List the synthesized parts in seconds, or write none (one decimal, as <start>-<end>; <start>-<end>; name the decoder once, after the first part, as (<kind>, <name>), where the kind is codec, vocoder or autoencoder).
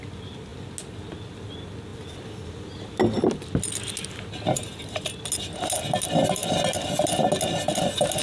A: none